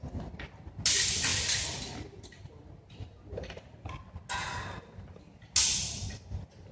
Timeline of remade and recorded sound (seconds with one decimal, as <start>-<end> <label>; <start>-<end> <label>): 0.0-6.7 recorded

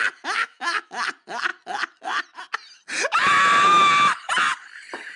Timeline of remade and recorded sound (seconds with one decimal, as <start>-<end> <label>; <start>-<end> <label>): 0.0-0.4 recorded; 0.4-0.9 remade; 0.9-5.2 recorded